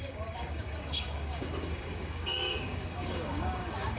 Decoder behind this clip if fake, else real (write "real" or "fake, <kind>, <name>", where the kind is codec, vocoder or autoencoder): fake, codec, DAC